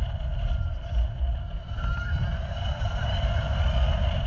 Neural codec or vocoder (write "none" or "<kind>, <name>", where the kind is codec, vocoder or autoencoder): none